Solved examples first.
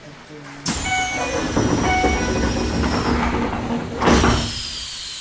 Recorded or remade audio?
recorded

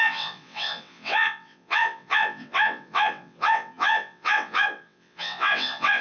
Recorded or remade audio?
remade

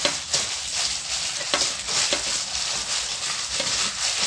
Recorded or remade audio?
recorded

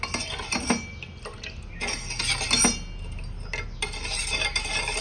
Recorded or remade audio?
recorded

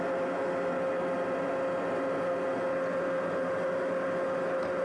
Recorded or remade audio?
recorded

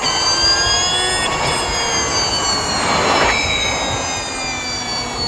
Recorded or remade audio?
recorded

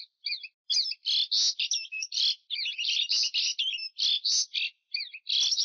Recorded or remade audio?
recorded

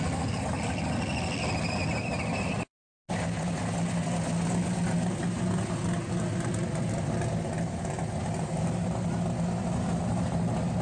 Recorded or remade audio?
recorded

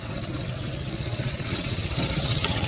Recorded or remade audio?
remade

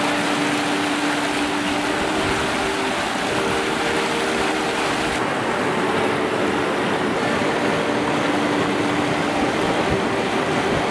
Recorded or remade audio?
recorded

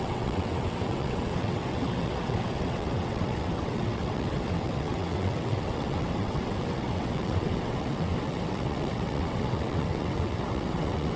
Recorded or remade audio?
remade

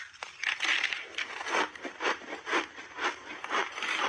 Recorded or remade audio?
recorded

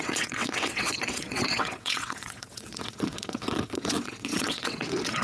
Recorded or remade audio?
remade